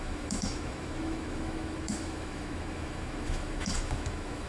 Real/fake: fake